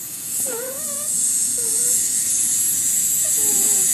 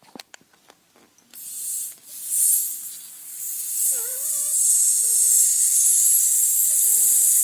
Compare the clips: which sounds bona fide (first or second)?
second